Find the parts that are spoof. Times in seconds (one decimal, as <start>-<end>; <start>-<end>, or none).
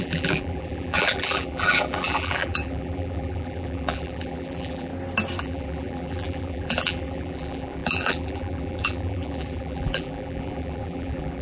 0.0-4.9; 5.4-11.4